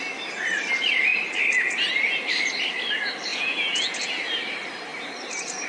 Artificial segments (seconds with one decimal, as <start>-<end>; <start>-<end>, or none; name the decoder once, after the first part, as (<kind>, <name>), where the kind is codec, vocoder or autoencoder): 3.3-4.0 (vocoder, Vocos)